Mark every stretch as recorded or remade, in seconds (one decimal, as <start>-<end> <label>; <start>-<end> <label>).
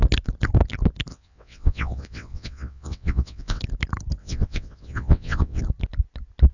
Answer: 0.0-1.1 recorded; 1.1-3.6 remade; 3.6-4.2 recorded; 4.2-5.6 remade; 5.6-6.5 recorded